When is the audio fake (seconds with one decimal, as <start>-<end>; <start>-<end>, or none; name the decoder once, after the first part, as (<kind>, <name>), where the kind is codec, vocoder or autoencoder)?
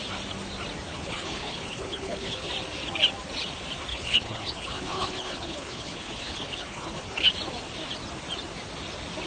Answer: 0.9-2.5 (codec, HILCodec); 3.9-7.3